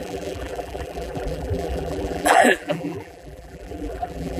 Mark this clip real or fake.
fake